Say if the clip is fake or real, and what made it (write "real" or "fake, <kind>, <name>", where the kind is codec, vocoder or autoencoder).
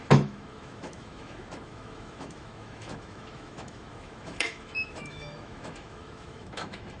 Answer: fake, autoencoder, DAC-VAE